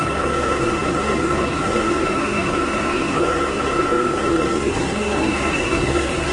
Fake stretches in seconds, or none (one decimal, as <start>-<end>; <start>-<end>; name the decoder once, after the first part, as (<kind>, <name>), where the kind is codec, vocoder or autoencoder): 0.0-6.3 (codec, SNAC)